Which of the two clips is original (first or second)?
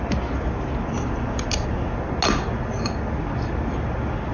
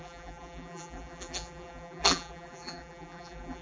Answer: first